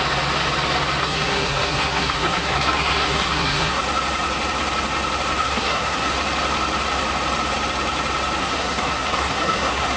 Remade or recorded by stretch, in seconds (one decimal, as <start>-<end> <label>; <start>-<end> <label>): 0.0-1.0 recorded; 1.0-3.8 remade; 3.8-5.4 recorded; 5.4-6.1 remade; 6.1-8.4 recorded; 8.4-10.0 remade

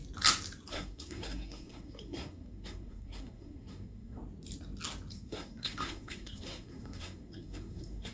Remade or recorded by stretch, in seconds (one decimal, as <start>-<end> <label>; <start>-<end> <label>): 0.0-0.7 recorded; 0.7-4.2 remade; 4.2-5.1 recorded; 5.1-8.1 remade